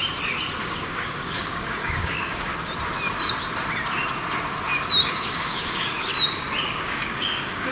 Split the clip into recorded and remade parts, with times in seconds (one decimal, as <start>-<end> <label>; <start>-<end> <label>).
0.0-0.6 recorded; 0.6-2.5 remade; 2.5-5.1 recorded; 5.1-6.1 remade; 6.1-6.6 recorded; 6.6-7.7 remade